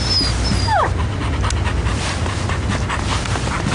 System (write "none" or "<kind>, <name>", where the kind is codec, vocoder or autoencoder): none